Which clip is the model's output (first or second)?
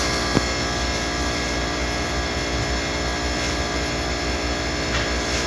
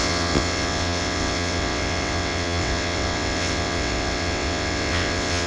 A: second